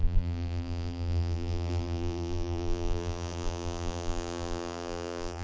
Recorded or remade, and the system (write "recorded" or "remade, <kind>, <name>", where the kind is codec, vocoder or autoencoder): remade, vocoder, BigVGAN v2